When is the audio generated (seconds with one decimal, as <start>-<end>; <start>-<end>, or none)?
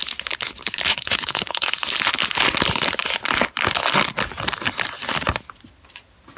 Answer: 0.9-1.7